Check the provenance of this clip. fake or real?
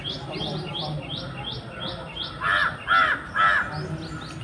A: real